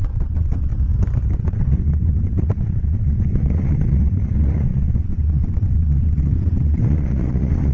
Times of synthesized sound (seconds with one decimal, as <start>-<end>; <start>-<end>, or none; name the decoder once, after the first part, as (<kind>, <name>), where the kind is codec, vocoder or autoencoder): 0.0-0.7 (vocoder, WaveNeXt); 1.3-7.7